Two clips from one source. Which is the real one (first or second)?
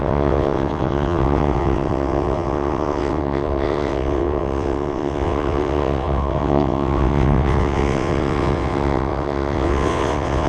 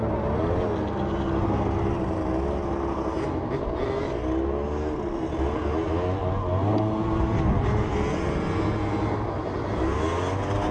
second